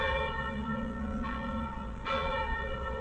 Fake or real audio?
fake